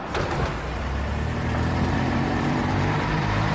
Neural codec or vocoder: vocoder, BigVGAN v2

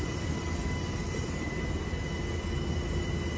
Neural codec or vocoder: none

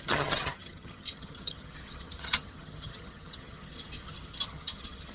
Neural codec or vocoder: vocoder, HiFi-GAN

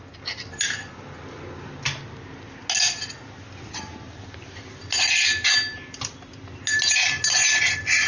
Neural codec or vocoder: none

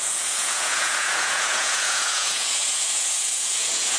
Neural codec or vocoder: vocoder, Vocos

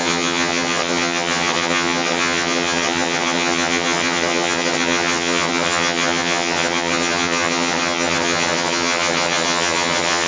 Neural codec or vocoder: vocoder, HiFi-GAN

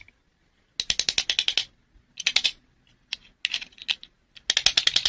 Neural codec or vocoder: none